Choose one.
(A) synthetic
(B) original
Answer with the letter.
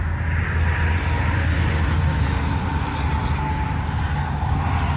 B